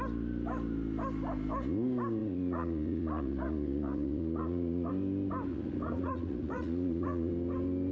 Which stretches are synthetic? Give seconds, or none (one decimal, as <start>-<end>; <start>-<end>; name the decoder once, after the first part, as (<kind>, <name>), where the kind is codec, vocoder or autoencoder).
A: 2.2-4.9 (vocoder, Vocos); 5.5-7.3